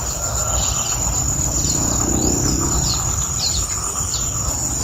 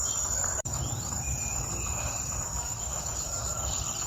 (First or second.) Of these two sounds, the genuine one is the first